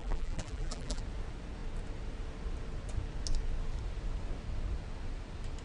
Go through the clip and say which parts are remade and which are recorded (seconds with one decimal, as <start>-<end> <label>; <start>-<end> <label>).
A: 0.0-1.0 remade; 1.0-5.6 recorded